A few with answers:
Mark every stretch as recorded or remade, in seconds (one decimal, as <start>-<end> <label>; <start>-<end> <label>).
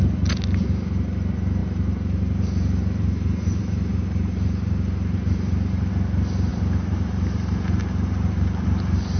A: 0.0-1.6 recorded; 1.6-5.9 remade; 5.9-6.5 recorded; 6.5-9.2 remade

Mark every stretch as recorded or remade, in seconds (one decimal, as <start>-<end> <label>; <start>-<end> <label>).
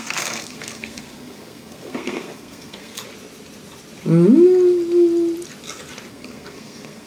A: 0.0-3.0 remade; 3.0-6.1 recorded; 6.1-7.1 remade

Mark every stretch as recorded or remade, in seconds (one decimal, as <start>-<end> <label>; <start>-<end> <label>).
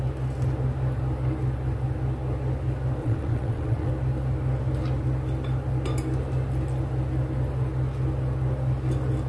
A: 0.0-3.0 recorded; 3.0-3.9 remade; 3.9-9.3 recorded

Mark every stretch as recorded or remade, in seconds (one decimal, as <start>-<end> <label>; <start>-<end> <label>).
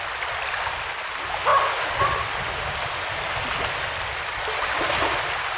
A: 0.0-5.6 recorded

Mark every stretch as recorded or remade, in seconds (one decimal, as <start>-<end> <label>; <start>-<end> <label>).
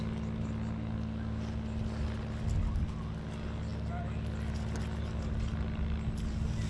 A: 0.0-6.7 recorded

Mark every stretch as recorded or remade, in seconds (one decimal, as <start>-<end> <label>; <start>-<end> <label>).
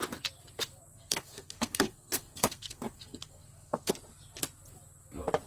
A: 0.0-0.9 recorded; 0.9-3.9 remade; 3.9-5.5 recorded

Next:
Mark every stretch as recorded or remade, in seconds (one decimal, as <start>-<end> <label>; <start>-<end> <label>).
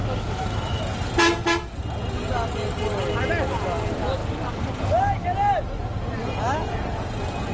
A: 0.0-0.8 remade; 0.8-7.5 recorded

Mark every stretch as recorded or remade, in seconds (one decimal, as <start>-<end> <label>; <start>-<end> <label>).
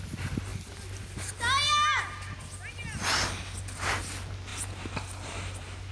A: 0.0-5.9 recorded